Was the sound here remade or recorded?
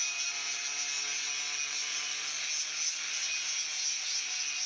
recorded